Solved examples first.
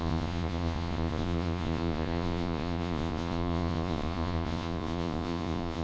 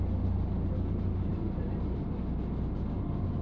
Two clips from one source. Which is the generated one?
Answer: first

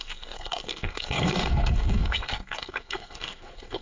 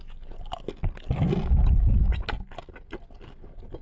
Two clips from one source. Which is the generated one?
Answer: first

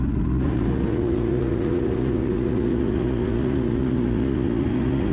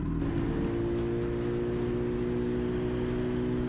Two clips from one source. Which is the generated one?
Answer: first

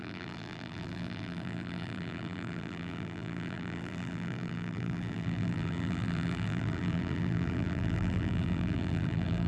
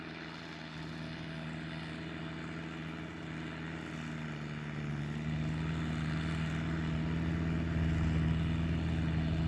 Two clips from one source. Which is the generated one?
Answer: first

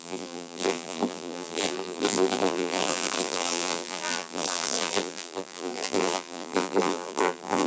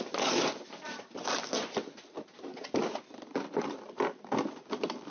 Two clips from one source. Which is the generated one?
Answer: first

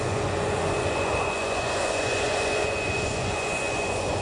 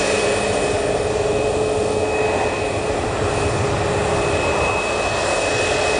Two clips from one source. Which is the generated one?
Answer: first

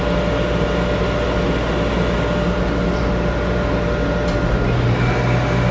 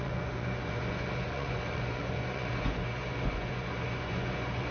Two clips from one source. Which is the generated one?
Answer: second